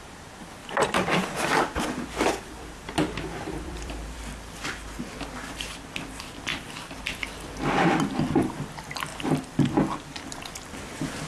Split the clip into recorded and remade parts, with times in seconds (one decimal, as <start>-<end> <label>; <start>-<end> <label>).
0.0-0.6 recorded; 0.6-4.2 remade; 4.2-6.5 recorded; 6.5-8.6 remade; 8.6-11.3 recorded